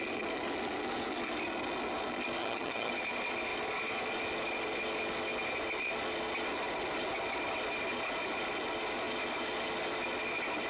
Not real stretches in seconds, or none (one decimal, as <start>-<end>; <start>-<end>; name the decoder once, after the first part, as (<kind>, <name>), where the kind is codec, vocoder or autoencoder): 2.4-2.9 (vocoder, HiFi-GAN)